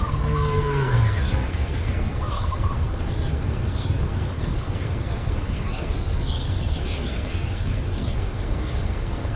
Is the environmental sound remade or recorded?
remade